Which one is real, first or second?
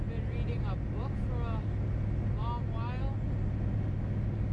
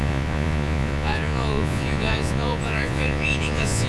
first